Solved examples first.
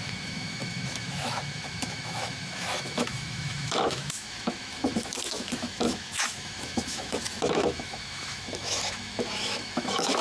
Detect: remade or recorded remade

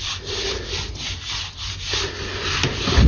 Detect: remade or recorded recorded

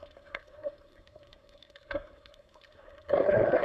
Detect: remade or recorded remade